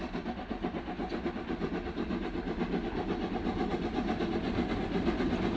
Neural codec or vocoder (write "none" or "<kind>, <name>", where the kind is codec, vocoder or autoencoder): none